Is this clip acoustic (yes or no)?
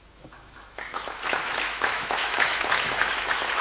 no